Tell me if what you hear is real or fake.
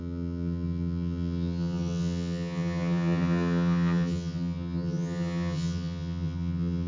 fake